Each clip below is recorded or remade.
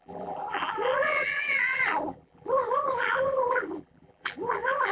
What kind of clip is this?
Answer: remade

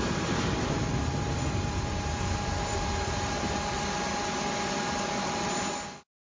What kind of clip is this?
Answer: recorded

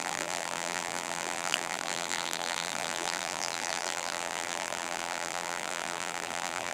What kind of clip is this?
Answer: remade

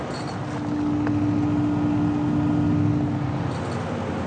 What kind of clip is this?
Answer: recorded